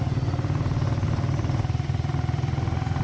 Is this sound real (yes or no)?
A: yes